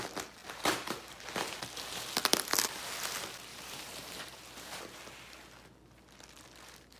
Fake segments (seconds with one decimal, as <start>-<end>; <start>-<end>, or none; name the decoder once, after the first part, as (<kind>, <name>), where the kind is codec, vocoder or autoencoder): 0.4-1.2 (vocoder, BigVGAN v2); 3.5-5.0